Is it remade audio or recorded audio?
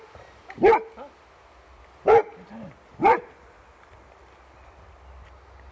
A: recorded